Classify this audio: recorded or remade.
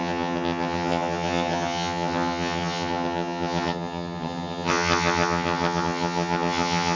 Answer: remade